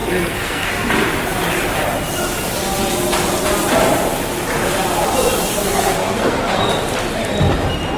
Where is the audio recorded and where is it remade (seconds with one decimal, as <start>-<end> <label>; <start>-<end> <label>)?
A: 0.0-0.7 remade; 0.7-5.5 recorded; 5.5-6.6 remade; 6.6-8.0 recorded